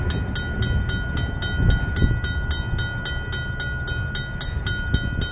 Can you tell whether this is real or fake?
real